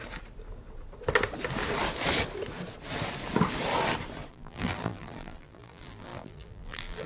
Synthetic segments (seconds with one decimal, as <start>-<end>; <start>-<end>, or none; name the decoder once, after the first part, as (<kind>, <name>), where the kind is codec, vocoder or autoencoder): 4.3-7.1 (vocoder, BigVGAN v2)